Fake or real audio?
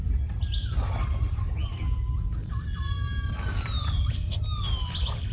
real